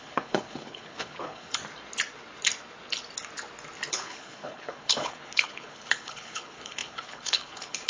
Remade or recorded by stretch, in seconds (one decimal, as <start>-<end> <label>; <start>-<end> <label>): 0.0-1.6 remade; 1.6-3.9 recorded; 3.9-7.9 remade